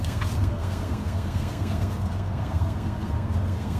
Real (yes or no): no